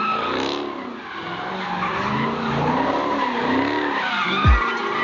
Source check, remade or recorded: recorded